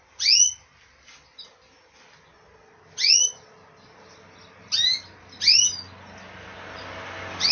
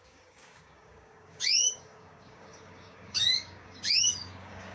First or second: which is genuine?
first